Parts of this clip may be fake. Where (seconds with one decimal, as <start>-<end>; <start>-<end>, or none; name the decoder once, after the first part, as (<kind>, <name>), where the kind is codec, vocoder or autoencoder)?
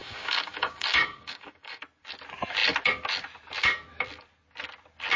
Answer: 0.0-1.8 (codec, DAC)